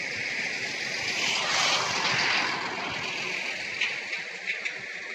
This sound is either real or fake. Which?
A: real